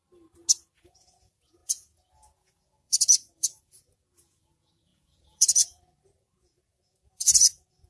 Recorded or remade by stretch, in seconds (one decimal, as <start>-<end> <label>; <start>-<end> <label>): 0.0-0.8 recorded; 0.8-7.9 remade